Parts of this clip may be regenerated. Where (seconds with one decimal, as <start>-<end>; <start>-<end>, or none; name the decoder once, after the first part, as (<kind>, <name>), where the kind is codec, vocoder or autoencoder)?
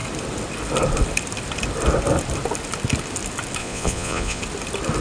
3.6-4.4 (vocoder, Vocos)